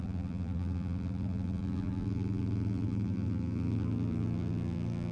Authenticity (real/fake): fake